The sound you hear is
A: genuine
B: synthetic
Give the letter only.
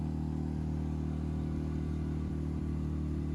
A